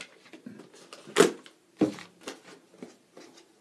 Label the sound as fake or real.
real